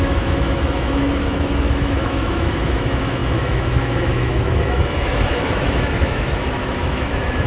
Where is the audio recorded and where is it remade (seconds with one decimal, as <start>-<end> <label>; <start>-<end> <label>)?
0.0-7.5 remade

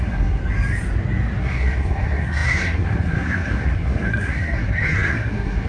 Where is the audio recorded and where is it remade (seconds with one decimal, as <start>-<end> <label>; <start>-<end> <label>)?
0.0-0.4 remade; 0.4-1.4 recorded; 1.4-5.7 remade

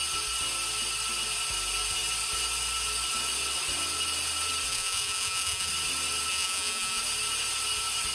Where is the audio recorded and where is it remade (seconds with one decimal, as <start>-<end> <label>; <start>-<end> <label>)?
0.0-4.7 recorded; 4.7-5.7 remade; 5.7-6.3 recorded; 6.3-7.0 remade; 7.0-8.1 recorded

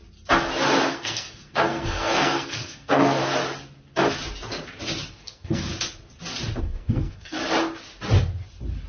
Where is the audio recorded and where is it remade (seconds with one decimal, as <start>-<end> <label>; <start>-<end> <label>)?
0.0-0.9 recorded; 0.9-3.2 remade; 3.2-5.1 recorded; 5.1-5.7 remade; 5.7-6.6 recorded; 6.6-7.4 remade; 7.4-8.9 recorded